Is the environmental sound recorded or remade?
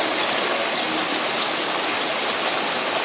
recorded